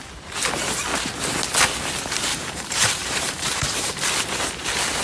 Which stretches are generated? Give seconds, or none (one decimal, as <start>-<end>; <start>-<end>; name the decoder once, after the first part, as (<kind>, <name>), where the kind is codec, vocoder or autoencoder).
2.3-4.1 (vocoder, BigVGAN v2)